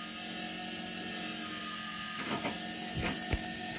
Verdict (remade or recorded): recorded